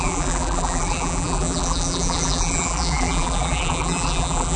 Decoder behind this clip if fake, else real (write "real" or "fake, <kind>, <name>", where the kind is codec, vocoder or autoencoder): fake, vocoder, BigVGAN v2